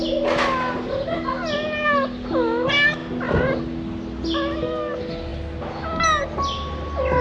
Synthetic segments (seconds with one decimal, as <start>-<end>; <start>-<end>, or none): none